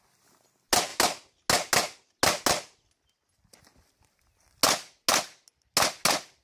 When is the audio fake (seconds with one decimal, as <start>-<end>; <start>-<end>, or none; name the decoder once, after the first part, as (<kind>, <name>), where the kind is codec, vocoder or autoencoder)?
none